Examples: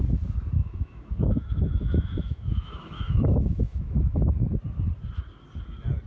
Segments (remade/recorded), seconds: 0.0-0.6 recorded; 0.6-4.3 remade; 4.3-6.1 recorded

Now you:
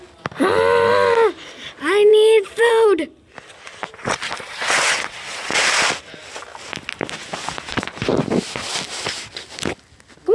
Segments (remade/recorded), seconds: 0.0-2.1 recorded; 2.1-2.7 remade; 2.7-10.3 recorded

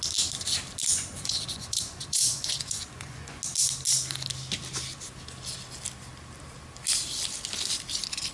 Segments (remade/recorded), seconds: 0.0-0.9 recorded; 0.9-3.4 remade; 3.4-8.3 recorded

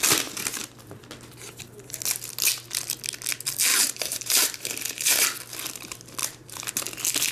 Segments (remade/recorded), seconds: 0.0-3.7 recorded; 3.7-5.2 remade; 5.2-6.2 recorded; 6.2-6.7 remade; 6.7-7.3 recorded

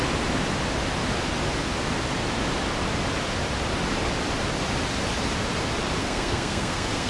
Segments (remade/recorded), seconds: 0.0-6.0 recorded; 6.0-7.1 remade

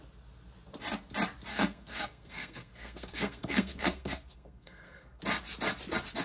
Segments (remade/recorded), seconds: 0.0-1.5 recorded; 1.5-5.2 remade; 5.2-6.2 recorded